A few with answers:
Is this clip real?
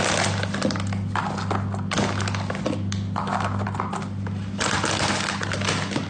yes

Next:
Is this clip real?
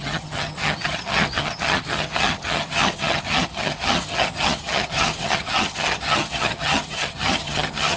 no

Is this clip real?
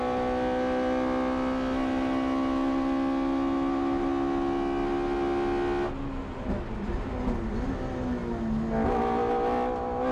yes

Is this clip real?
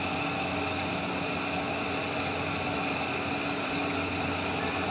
yes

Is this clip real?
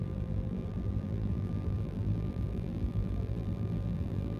no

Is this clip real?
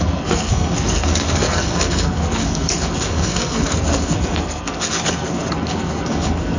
no